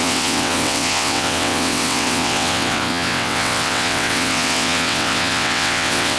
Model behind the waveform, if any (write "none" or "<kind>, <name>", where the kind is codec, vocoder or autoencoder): vocoder, WaveNeXt